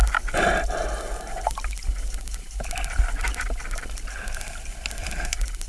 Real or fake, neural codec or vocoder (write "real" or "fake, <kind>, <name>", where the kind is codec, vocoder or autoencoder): real